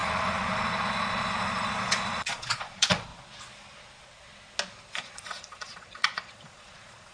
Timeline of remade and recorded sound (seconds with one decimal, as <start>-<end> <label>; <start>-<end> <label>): 0.0-3.1 remade; 3.1-5.0 recorded; 5.0-7.1 remade